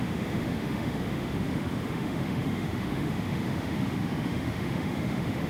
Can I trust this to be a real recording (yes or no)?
no